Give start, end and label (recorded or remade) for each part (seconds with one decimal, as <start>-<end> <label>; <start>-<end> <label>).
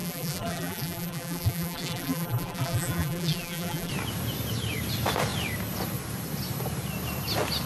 0.0-3.9 remade; 3.9-7.7 recorded